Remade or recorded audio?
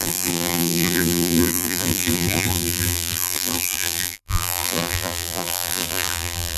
remade